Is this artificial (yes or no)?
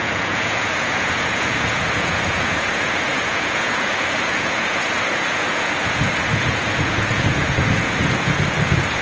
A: yes